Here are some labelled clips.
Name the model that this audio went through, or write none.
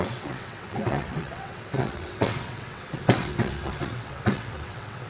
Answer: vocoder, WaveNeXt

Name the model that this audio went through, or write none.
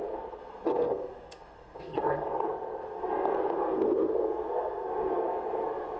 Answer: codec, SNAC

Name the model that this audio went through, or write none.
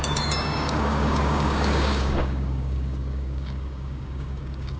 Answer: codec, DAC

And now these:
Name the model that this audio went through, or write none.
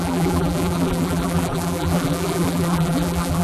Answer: vocoder, BigVGAN v2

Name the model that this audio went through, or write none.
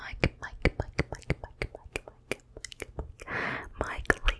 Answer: none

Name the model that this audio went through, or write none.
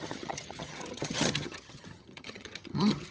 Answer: vocoder, HiFi-GAN